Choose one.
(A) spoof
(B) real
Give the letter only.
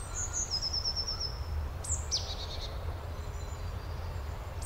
B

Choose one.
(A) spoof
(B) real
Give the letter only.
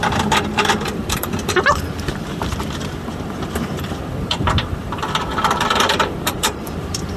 A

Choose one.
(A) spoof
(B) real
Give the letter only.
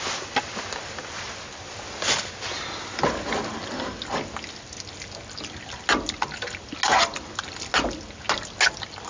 B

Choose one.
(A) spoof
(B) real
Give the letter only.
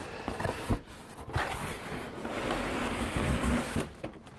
B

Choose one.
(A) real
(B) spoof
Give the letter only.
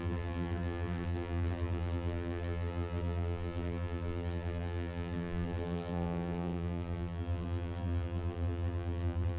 B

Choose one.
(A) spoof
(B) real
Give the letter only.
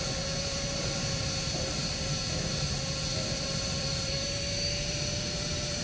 A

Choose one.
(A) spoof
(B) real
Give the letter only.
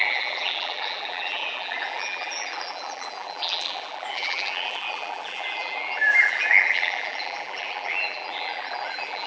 A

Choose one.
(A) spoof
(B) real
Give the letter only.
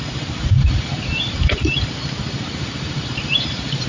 A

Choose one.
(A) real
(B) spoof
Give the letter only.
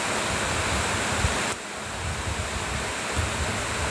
A